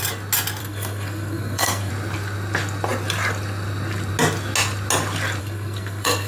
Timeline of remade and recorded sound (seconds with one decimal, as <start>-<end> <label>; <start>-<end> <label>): 0.0-0.6 recorded; 0.6-1.9 remade; 1.9-5.4 recorded; 5.4-6.3 remade